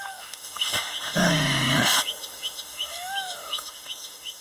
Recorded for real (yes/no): no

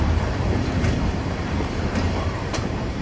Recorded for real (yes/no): no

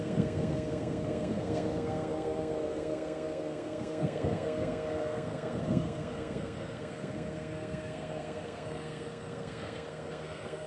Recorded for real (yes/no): no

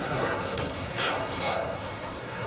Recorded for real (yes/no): no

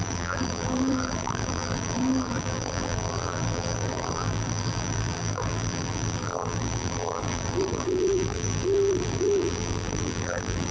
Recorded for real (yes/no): no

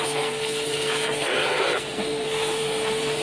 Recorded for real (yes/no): no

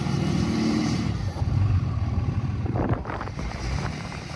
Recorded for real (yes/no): no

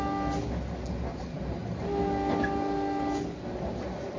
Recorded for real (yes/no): yes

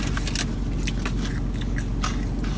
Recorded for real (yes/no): yes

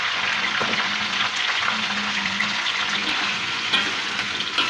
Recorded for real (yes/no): no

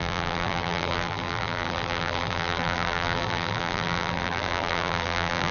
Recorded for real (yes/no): no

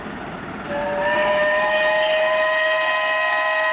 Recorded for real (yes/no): yes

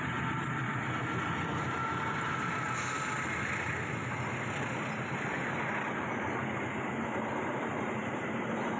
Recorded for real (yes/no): yes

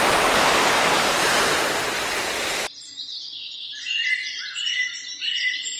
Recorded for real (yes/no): yes